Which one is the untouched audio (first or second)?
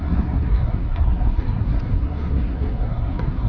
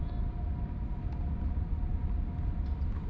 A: second